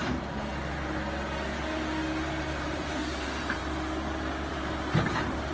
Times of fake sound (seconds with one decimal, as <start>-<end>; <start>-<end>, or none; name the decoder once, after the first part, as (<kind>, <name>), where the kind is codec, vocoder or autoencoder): 0.0-0.5 (vocoder, BigVGAN v2); 2.4-3.6; 4.5-5.5